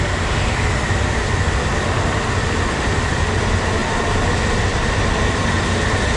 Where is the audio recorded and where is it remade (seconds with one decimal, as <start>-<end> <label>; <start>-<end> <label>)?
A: 0.0-6.2 recorded